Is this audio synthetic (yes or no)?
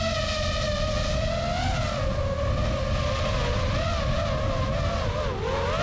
no